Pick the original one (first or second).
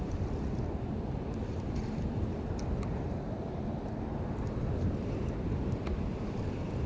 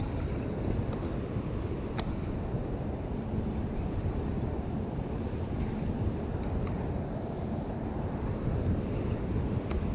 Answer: first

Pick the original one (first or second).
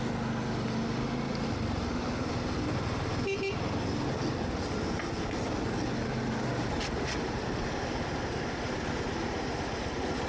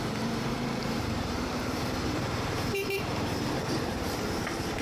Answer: first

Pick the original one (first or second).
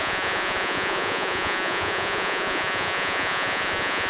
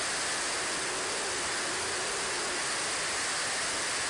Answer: second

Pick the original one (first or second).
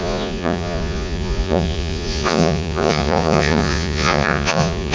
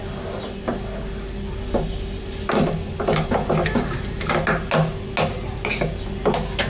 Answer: second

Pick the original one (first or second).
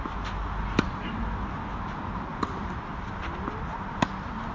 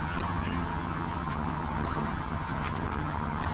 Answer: first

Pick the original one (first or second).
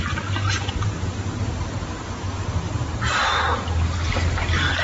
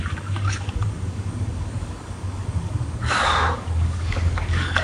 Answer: first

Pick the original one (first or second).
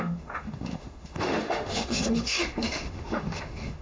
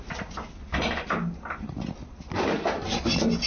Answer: second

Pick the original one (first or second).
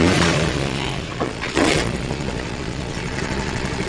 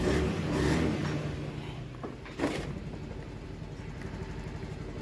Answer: second